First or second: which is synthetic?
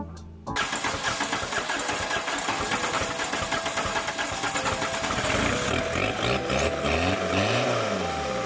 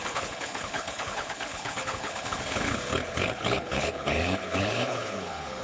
second